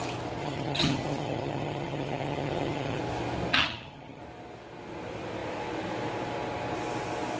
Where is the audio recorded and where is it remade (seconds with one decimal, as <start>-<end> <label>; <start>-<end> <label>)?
0.0-0.4 recorded; 0.4-3.0 remade; 3.0-3.5 recorded; 3.5-4.2 remade; 4.2-7.4 recorded